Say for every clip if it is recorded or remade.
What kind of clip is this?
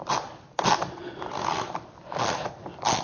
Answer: recorded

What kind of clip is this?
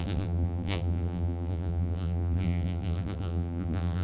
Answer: remade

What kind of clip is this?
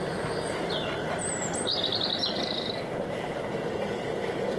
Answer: remade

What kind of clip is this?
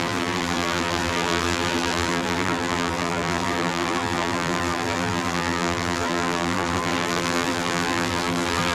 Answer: remade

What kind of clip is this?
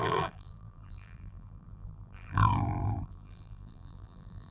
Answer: remade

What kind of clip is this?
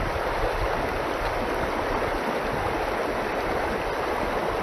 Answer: recorded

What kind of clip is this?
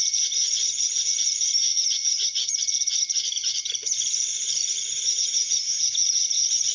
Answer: recorded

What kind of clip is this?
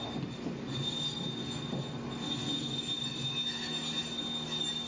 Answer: recorded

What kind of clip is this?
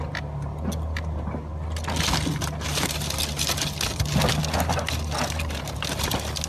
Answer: recorded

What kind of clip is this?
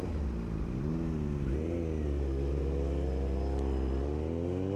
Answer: recorded